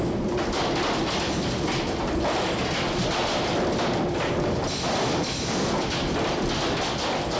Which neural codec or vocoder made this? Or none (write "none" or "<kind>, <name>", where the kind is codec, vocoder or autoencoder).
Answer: none